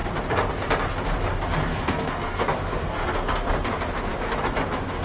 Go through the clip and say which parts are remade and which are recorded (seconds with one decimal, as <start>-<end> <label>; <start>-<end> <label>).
0.0-1.7 recorded; 1.7-3.5 remade; 3.5-5.0 recorded